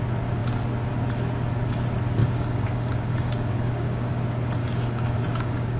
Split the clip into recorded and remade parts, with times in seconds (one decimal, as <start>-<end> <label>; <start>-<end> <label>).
0.0-2.2 recorded; 2.2-4.1 remade; 4.1-4.6 recorded; 4.6-5.8 remade